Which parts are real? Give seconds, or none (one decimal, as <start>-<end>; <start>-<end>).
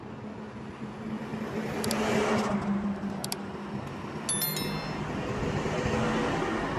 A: 0.0-6.8